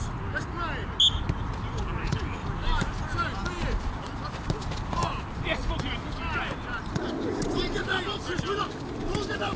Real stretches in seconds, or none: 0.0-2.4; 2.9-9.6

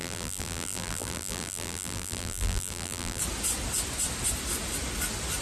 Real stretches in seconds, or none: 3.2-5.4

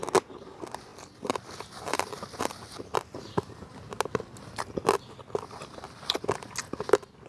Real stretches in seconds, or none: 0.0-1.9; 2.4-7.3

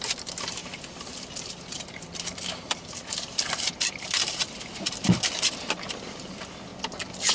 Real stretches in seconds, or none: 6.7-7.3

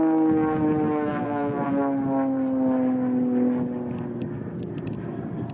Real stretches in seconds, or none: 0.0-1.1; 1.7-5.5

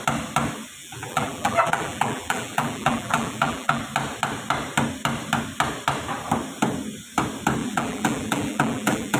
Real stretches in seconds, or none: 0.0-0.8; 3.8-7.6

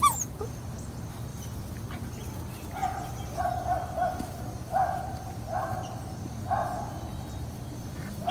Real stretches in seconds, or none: 0.0-1.3; 1.8-8.3